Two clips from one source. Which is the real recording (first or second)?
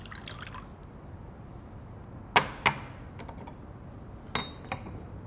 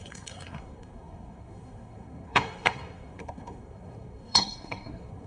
first